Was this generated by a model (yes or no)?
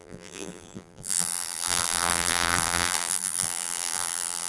yes